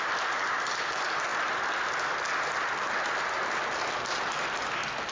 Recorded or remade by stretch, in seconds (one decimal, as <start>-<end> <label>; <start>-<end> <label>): 0.0-5.1 recorded